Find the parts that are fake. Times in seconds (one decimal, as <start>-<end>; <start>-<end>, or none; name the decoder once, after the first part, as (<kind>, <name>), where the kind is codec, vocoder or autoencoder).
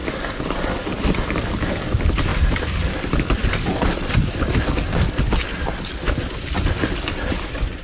none